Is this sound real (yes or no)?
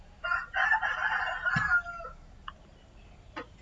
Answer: no